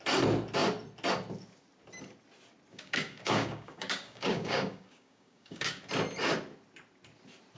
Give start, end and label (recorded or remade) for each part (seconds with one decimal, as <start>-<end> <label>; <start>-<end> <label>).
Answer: 0.0-2.7 recorded; 2.7-5.8 remade; 5.8-7.6 recorded